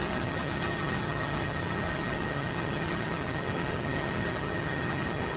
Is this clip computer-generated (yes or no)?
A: yes